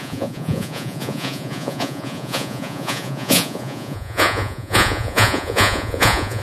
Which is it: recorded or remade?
remade